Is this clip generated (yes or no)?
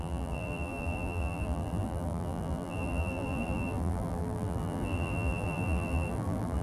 yes